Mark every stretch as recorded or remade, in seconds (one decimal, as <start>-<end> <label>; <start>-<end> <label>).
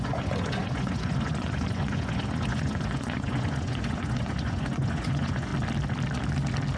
0.0-5.5 remade; 5.5-6.8 recorded